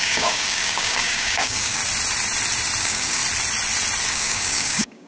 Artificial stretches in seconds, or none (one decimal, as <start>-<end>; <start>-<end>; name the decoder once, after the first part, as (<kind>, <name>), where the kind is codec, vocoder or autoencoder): 0.0-1.8 (codec, DAC); 2.8-3.2; 4.1-5.1